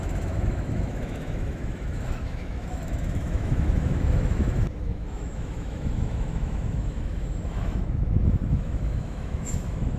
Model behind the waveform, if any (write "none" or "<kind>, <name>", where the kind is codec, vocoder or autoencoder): autoencoder, DAC-VAE